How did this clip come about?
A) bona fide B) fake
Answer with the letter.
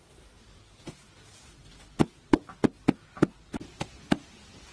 A